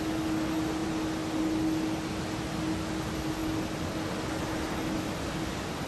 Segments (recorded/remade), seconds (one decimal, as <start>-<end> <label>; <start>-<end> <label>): 0.0-5.9 recorded